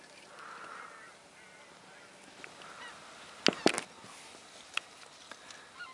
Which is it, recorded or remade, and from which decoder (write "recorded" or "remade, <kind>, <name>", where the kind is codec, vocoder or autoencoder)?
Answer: recorded